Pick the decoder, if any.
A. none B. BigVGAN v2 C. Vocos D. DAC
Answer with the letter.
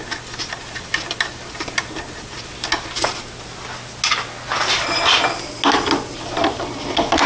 A